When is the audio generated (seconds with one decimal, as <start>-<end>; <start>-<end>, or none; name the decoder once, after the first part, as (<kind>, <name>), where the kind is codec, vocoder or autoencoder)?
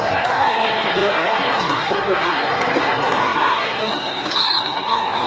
0.0-5.3 (codec, SNAC)